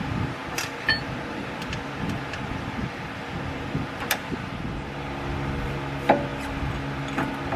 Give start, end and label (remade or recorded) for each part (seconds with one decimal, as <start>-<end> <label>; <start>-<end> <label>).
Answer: 0.0-7.6 recorded